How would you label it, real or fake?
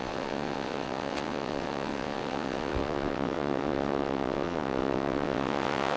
fake